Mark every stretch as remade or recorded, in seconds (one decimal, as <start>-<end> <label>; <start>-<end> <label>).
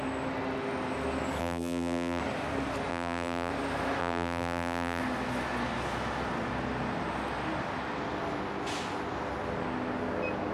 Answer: 0.0-1.4 recorded; 1.4-2.2 remade; 2.2-2.9 recorded; 2.9-3.5 remade; 3.5-4.0 recorded; 4.0-5.0 remade; 5.0-10.5 recorded